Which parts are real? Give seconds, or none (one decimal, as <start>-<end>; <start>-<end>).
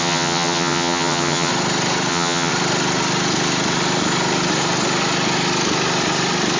1.5-2.1; 2.5-6.6